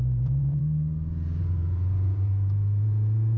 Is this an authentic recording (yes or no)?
no